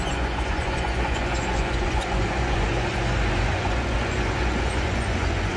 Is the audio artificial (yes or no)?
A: yes